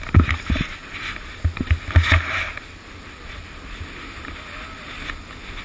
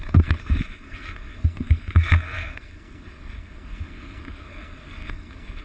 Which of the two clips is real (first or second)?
first